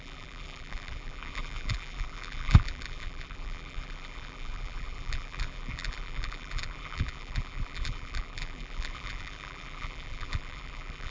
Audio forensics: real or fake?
fake